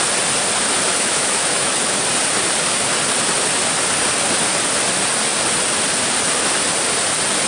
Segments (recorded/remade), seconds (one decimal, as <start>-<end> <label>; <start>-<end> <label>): 0.0-0.9 recorded; 0.9-2.0 remade; 2.0-7.5 recorded